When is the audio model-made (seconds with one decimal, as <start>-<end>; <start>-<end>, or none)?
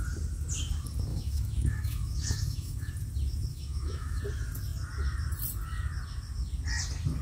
1.1-2.9; 3.5-4.2